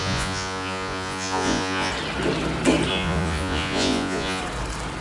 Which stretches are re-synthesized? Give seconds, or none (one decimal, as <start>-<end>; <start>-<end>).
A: 0.0-1.9; 2.9-4.4

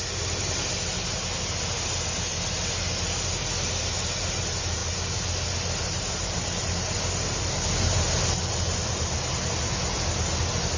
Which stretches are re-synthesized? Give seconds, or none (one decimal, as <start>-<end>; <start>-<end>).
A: none